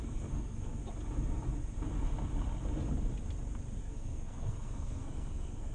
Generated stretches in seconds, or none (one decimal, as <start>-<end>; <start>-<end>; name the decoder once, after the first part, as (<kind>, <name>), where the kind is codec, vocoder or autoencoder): 0.0-0.8 (codec, SNAC); 3.8-5.7